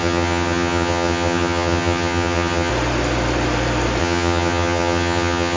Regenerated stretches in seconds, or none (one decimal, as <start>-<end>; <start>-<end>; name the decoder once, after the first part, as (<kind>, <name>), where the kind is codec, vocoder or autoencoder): 0.0-2.7 (vocoder, HiFi-GAN); 4.0-5.6